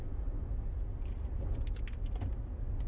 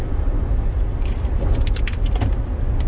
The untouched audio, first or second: first